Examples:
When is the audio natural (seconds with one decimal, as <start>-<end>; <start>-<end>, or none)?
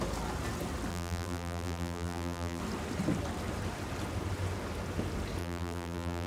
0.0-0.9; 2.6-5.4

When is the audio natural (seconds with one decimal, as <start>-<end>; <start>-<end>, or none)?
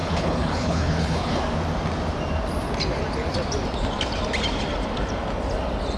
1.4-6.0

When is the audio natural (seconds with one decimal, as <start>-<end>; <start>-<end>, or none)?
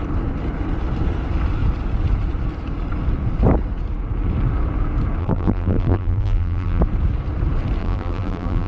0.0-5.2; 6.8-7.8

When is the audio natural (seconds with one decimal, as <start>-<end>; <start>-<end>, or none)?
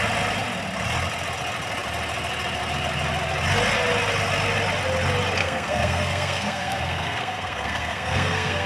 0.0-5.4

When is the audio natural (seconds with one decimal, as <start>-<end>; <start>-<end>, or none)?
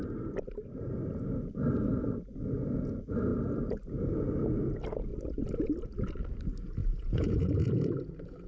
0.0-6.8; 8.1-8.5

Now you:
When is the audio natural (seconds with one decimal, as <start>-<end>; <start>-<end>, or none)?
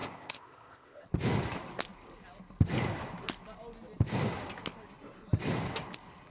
1.1-6.3